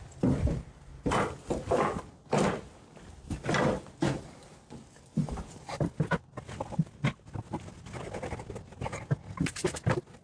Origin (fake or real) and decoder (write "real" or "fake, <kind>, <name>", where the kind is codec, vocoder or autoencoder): real